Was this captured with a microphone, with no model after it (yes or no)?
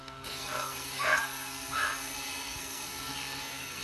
no